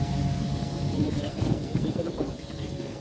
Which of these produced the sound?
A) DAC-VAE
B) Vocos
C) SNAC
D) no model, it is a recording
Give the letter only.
C